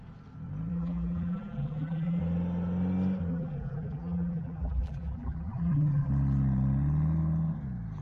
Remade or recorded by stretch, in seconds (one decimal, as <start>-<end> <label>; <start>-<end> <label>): 0.0-0.7 recorded; 0.7-2.2 remade; 2.2-3.3 recorded; 3.3-6.1 remade; 6.1-8.0 recorded